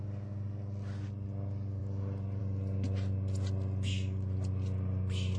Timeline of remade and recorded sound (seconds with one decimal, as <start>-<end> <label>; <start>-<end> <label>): 0.0-5.4 recorded